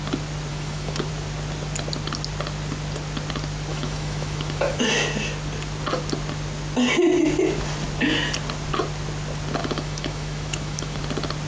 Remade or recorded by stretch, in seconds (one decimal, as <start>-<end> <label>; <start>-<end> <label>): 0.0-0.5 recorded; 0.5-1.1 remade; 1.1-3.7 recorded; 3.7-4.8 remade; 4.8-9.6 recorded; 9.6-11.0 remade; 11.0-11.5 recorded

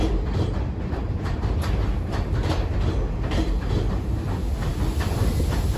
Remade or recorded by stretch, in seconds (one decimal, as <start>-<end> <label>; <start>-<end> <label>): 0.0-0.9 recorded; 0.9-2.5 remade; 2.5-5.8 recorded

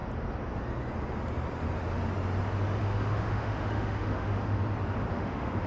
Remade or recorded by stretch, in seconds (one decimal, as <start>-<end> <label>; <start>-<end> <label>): 0.0-2.8 recorded; 2.8-4.6 remade; 4.6-5.1 recorded; 5.1-5.7 remade